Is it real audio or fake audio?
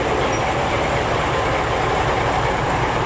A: real